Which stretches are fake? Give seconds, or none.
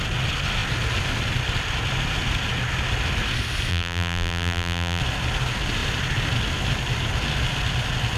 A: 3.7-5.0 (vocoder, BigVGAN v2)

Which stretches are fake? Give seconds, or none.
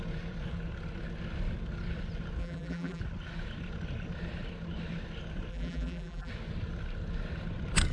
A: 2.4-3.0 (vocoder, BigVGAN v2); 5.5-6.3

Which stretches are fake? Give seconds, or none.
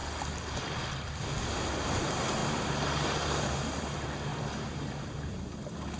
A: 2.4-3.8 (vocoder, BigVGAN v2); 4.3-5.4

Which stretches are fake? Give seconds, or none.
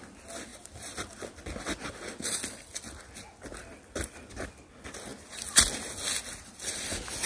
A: 0.5-2.8 (vocoder, BigVGAN v2); 3.6-4.5; 5.1-5.9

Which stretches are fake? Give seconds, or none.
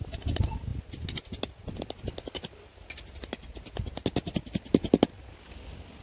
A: none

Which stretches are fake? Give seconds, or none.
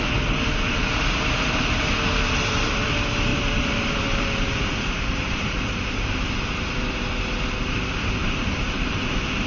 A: 3.3-6.7 (vocoder, BigVGAN v2); 8.2-8.8